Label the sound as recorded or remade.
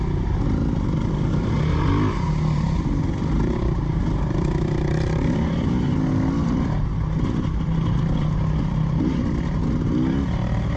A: recorded